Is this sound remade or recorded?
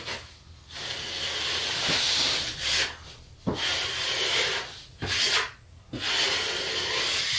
recorded